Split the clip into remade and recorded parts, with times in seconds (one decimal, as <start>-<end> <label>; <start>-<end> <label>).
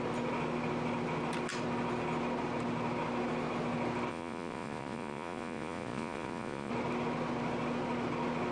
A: 0.0-4.1 recorded; 4.1-6.7 remade; 6.7-8.5 recorded